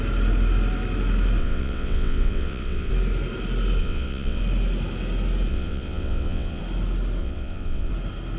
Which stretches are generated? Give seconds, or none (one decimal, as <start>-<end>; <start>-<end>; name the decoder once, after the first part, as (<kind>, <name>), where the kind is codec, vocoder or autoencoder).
1.4-2.9 (vocoder, WaveNeXt); 3.8-4.4; 5.5-6.6; 7.2-7.9